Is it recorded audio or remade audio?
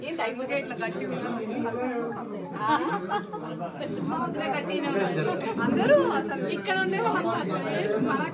recorded